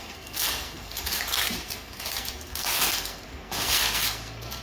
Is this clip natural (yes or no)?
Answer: no